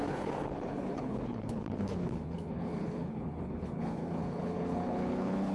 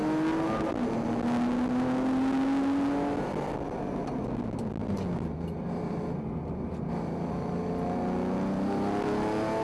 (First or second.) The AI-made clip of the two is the first